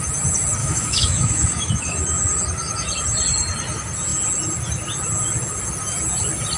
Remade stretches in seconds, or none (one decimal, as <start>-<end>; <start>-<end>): 0.6-1.7